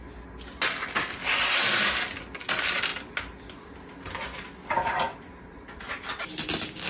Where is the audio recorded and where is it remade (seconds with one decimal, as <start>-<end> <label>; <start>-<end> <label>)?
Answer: 0.0-6.9 recorded